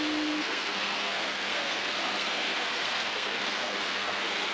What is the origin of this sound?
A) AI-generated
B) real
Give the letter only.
A